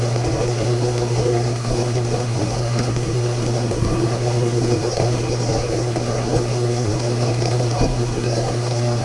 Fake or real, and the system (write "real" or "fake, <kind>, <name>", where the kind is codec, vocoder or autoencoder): fake, codec, SNAC